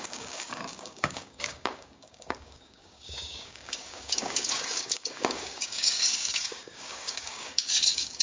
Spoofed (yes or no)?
yes